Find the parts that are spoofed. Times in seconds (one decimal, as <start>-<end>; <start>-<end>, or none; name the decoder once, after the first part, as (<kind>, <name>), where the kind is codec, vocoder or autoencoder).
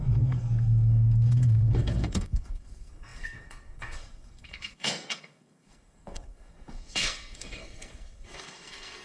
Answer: 0.0-9.0 (codec, SNAC)